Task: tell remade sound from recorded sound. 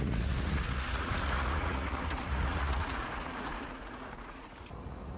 remade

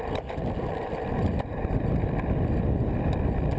recorded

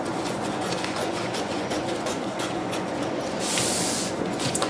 remade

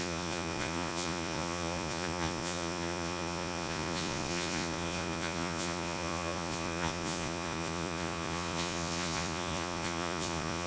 remade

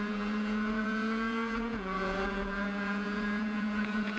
remade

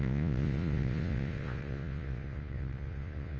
remade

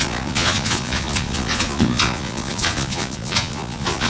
remade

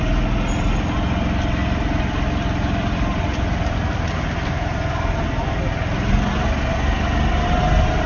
recorded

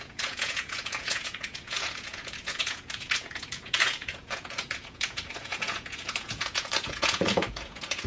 remade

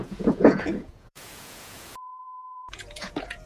remade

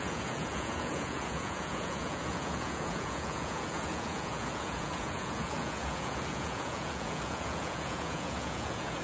remade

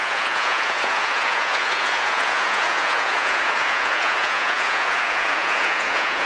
remade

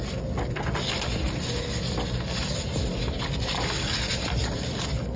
recorded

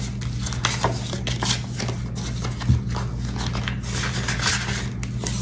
recorded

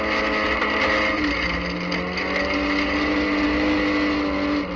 recorded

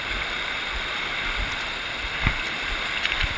recorded